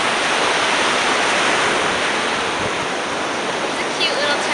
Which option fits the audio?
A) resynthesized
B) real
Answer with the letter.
B